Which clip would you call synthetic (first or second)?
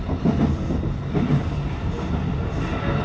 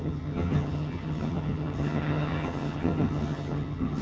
second